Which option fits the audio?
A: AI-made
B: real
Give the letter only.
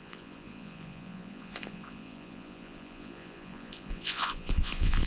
A